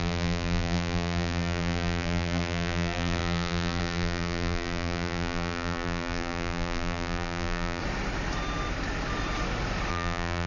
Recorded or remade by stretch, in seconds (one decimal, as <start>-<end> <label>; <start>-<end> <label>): 0.0-7.8 remade; 7.8-9.9 recorded; 9.9-10.5 remade